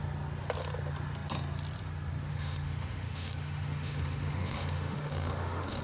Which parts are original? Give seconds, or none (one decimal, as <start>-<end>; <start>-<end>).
0.0-2.3